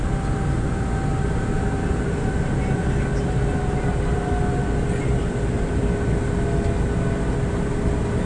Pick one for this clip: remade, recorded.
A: recorded